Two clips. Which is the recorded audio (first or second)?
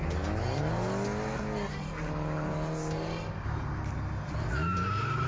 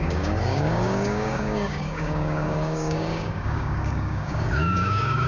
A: first